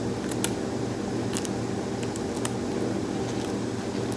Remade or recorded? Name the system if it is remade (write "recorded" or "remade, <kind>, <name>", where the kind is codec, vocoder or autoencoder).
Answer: recorded